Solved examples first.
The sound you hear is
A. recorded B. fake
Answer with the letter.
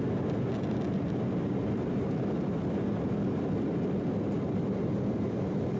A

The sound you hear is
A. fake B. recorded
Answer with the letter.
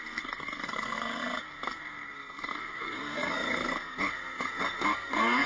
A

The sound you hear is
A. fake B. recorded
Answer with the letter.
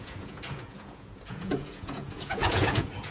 A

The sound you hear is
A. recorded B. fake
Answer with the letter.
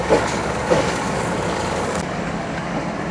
B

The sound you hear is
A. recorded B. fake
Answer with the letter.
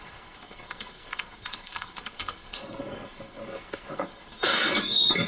B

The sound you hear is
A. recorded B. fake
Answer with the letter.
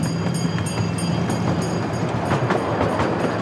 A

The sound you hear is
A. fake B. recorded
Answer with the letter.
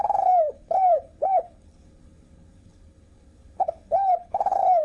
A